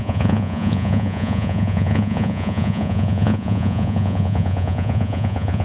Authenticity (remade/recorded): remade